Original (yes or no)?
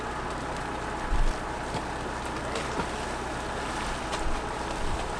yes